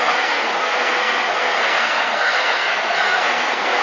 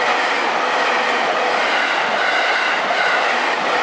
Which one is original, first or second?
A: second